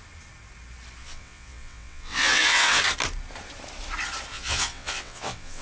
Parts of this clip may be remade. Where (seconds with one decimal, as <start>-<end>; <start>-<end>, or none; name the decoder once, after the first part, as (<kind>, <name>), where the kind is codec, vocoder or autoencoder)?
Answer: 1.0-2.8 (vocoder, WaveNeXt); 4.3-5.6

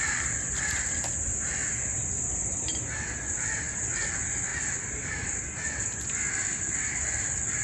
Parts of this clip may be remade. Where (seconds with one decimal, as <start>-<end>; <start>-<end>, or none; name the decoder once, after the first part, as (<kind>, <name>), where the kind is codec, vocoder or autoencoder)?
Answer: 1.6-2.8 (vocoder, BigVGAN v2); 4.5-5.4

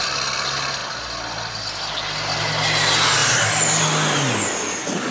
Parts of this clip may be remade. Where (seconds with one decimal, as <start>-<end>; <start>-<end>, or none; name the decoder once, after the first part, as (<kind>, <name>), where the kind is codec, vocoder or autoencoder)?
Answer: none